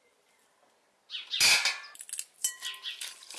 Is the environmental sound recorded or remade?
recorded